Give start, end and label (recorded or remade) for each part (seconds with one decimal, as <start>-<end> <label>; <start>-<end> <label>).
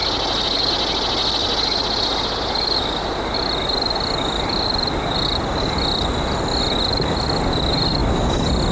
0.0-8.7 recorded